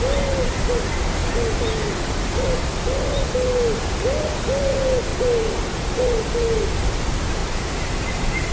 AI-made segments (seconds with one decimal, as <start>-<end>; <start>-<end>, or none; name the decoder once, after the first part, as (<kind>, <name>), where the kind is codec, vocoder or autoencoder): none